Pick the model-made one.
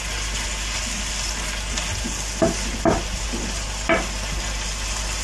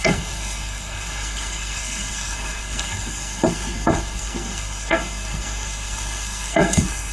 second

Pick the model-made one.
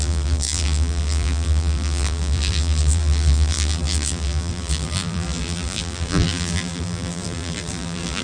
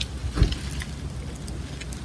first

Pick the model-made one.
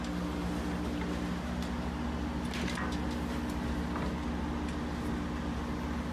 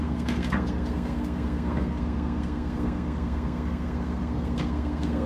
second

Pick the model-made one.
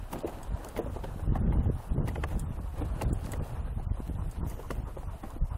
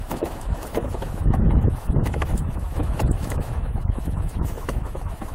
second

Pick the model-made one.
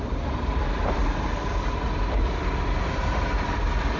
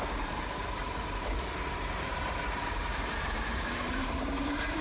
second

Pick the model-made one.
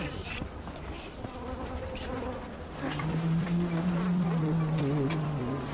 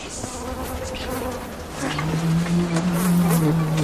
first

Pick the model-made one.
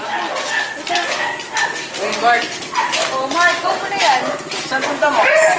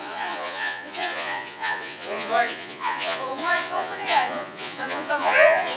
second